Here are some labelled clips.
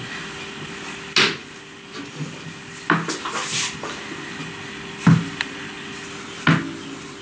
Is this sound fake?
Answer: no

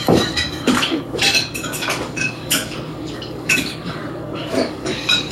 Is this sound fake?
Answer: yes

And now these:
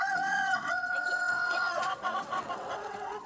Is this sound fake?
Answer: yes